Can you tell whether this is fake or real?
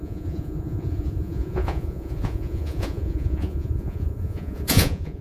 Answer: fake